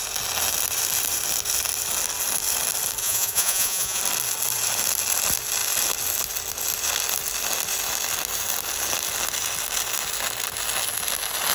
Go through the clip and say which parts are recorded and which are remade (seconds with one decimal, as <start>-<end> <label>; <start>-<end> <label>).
0.0-3.0 recorded; 3.0-4.0 remade; 4.0-11.5 recorded